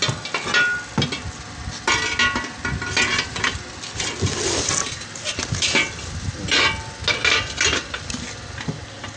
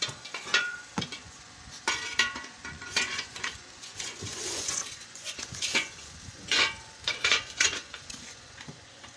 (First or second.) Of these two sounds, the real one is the first